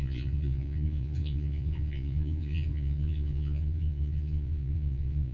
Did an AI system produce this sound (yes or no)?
yes